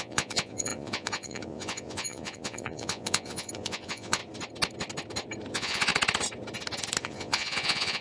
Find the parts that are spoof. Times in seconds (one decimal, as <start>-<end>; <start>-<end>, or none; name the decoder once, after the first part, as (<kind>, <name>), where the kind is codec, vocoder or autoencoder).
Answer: 0.0-4.2 (vocoder, Vocos); 5.5-5.9; 7.0-8.0

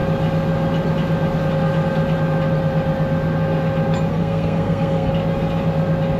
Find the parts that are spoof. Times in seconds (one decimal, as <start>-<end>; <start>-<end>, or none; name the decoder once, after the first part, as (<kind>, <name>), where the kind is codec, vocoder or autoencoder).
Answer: 4.1-5.1 (codec, SNAC)

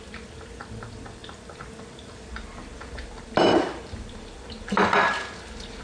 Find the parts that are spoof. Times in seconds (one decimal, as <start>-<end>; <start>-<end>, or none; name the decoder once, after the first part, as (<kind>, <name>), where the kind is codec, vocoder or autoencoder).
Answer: 0.0-5.8 (vocoder, BigVGAN v2)

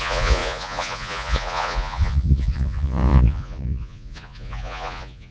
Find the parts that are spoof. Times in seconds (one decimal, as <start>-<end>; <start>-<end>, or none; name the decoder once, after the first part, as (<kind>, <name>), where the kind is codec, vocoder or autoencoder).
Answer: 0.0-5.3 (vocoder, Vocos)

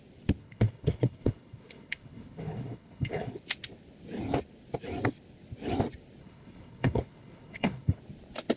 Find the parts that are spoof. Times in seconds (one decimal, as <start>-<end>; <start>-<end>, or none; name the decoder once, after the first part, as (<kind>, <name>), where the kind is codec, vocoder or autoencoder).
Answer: 0.4-3.3 (codec, HILCodec); 6.2-8.0

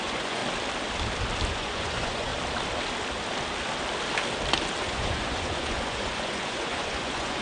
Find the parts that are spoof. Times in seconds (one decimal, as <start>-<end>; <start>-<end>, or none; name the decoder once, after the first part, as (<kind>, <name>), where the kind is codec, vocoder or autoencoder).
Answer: 0.0-0.4 (vocoder, Vocos); 1.5-2.3; 4.8-7.4

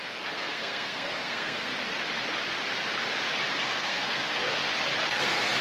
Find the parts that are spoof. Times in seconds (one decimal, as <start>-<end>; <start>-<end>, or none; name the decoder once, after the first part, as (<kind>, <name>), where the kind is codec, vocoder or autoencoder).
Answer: 0.0-1.7 (codec, SNAC); 3.6-4.6; 5.1-5.6